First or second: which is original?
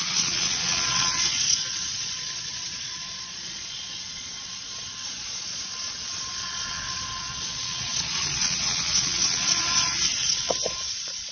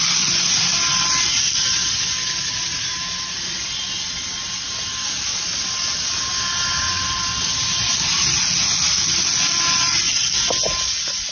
second